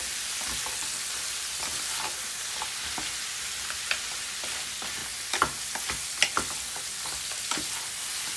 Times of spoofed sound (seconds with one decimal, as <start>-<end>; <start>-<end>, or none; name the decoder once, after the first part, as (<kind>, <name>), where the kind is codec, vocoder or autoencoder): none

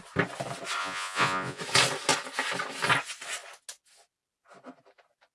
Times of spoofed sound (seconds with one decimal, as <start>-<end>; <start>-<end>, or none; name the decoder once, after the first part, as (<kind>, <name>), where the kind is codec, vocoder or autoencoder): 0.8-1.6 (vocoder, Vocos)

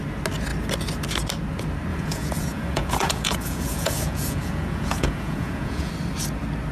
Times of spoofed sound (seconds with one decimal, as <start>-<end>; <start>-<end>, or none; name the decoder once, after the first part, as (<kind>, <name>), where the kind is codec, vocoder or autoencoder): 1.9-5.9 (vocoder, Vocos)

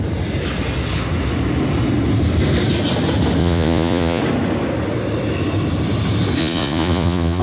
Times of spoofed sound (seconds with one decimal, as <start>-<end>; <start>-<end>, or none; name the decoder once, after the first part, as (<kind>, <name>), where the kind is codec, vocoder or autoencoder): 3.4-4.2 (vocoder, Vocos); 6.4-7.4